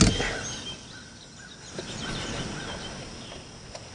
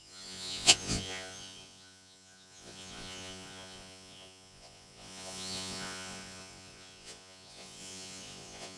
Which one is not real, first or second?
second